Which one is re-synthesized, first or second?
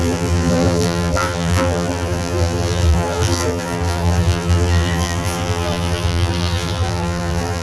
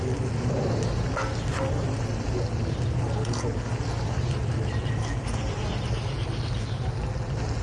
first